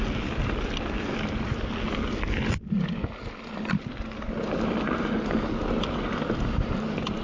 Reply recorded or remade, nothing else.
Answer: recorded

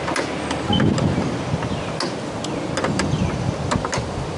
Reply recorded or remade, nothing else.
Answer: recorded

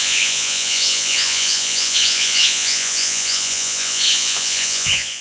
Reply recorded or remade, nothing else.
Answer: remade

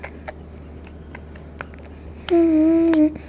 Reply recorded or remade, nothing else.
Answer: recorded